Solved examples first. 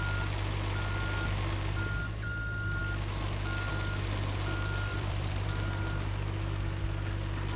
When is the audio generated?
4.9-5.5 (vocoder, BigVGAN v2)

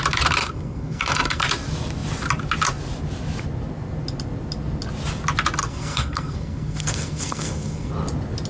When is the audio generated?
0.4-1.4 (codec, SNAC); 5.6-7.9